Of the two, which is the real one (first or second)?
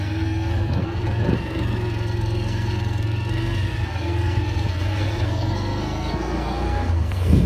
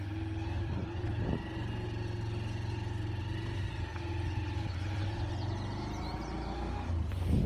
second